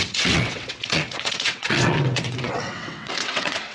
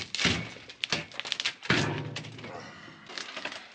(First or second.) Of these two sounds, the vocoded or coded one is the first